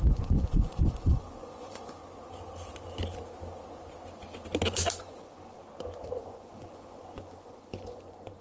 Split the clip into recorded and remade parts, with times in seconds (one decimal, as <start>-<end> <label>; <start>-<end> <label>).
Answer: 0.0-2.0 remade; 2.0-5.0 recorded; 5.0-5.6 remade; 5.6-6.2 recorded; 6.2-8.4 remade